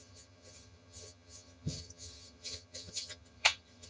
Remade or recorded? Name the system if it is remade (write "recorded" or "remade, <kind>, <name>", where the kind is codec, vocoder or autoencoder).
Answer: remade, vocoder, HiFi-GAN